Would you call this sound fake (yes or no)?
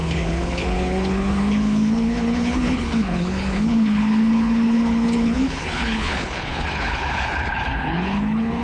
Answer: yes